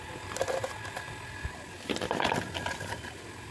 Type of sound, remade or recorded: recorded